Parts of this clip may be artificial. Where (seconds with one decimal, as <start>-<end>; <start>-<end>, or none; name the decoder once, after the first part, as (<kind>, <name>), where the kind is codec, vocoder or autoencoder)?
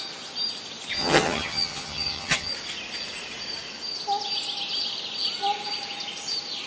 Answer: 1.0-2.5 (vocoder, HiFi-GAN)